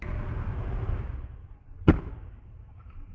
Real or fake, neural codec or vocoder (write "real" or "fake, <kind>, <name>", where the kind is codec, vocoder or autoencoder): real